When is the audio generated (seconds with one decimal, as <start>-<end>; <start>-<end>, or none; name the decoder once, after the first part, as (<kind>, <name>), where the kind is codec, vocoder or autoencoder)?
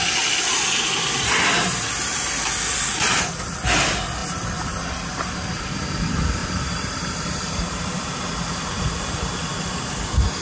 6.4-9.2 (vocoder, BigVGAN v2)